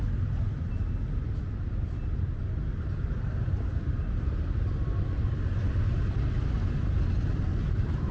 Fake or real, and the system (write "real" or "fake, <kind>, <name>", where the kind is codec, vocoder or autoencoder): real